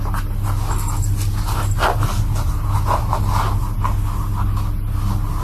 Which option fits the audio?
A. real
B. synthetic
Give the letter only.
A